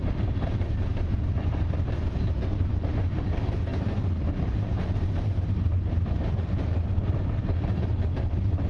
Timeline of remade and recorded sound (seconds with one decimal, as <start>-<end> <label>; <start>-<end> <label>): 0.0-8.7 recorded